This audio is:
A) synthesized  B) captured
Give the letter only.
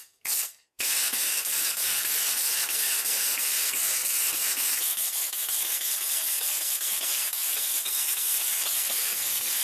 A